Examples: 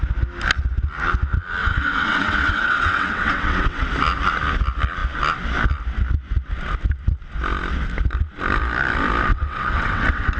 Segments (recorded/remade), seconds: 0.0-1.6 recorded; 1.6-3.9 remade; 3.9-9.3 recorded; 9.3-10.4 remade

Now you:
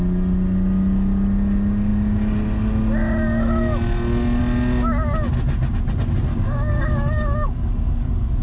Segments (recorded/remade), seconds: 0.0-6.3 recorded; 6.3-8.4 remade

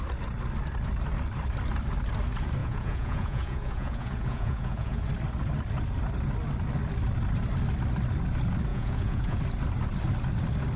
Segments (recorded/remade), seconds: 0.0-2.6 recorded; 2.6-5.0 remade; 5.0-8.7 recorded; 8.7-9.4 remade; 9.4-10.8 recorded

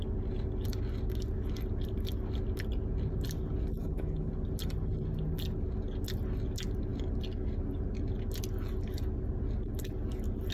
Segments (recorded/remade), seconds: 0.0-3.8 recorded; 3.8-4.3 remade; 4.3-10.5 recorded

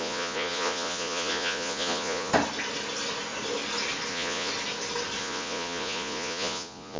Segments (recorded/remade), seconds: 0.0-2.3 remade; 2.3-4.1 recorded; 4.1-4.5 remade; 4.5-5.2 recorded; 5.2-7.0 remade

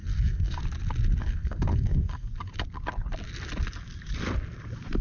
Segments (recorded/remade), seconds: 0.0-0.6 remade; 0.6-1.2 recorded; 1.2-2.3 remade; 2.3-5.0 recorded

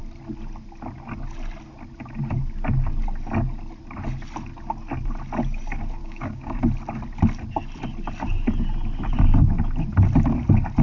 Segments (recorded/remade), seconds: 0.0-6.0 recorded; 6.0-6.6 remade; 6.6-10.8 recorded

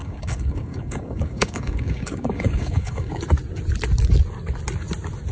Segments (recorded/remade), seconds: 0.0-3.2 remade; 3.2-5.3 recorded